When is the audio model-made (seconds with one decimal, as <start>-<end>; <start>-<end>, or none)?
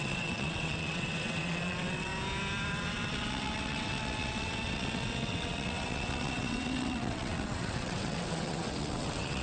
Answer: 0.0-2.1; 2.7-9.4